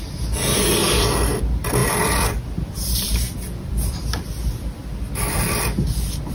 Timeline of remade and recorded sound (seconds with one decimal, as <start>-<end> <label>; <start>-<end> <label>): 0.0-0.8 recorded; 0.8-1.4 remade; 1.4-1.8 recorded; 1.8-5.0 remade; 5.0-6.3 recorded